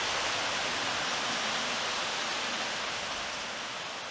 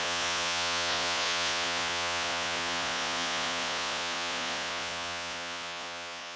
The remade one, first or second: second